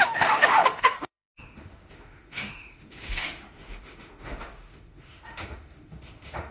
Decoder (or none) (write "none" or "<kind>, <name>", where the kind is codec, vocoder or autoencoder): autoencoder, DAC-VAE